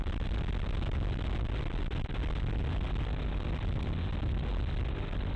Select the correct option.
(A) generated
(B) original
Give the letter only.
B